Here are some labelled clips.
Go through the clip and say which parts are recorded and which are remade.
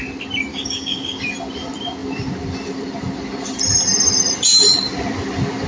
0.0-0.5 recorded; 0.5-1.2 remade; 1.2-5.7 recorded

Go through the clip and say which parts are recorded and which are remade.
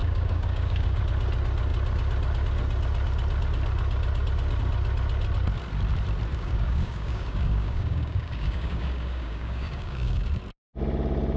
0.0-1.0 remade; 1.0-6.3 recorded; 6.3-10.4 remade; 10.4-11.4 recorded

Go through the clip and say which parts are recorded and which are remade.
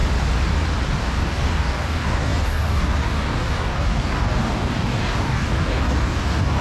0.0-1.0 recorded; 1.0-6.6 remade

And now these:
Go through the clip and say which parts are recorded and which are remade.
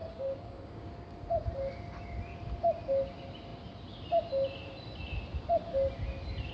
0.0-0.9 remade; 0.9-6.5 recorded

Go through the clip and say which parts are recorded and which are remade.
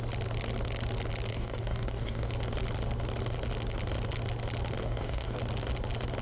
0.0-1.3 recorded; 1.3-2.3 remade; 2.3-4.8 recorded; 4.8-5.4 remade; 5.4-6.2 recorded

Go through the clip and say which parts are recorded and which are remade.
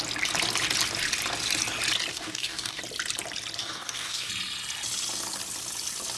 0.0-2.1 recorded; 2.1-2.8 remade; 2.8-3.6 recorded; 3.6-4.3 remade; 4.3-6.2 recorded